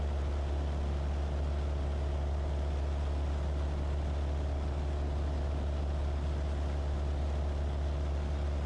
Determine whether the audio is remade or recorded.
recorded